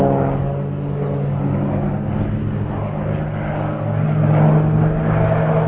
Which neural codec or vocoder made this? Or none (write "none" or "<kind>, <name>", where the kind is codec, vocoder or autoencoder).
none